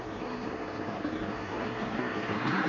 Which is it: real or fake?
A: fake